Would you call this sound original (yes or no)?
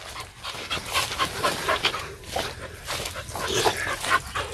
yes